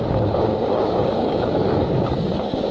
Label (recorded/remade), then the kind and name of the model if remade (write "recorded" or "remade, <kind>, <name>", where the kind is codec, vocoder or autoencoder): remade, codec, DAC